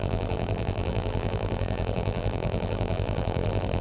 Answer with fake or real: fake